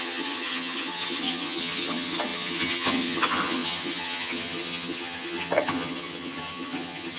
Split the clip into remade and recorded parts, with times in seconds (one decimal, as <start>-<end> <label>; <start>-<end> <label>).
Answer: 0.0-7.2 remade